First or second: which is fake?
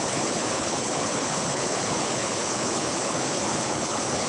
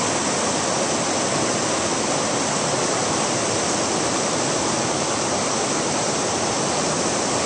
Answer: first